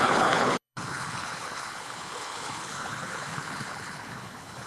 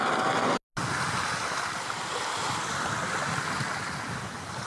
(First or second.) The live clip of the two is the second